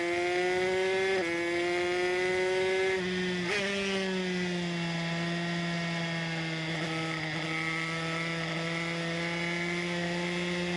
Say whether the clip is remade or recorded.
recorded